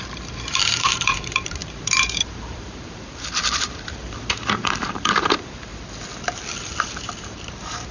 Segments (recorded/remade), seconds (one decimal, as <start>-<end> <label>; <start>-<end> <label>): 0.0-5.7 remade; 5.7-6.8 recorded; 6.8-7.9 remade